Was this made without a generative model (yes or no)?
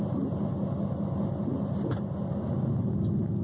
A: yes